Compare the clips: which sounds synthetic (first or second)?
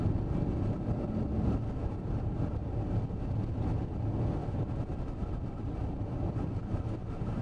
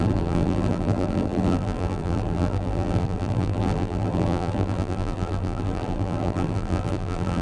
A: second